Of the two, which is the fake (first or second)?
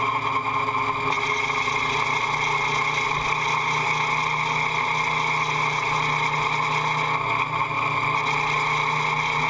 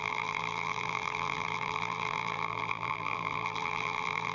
second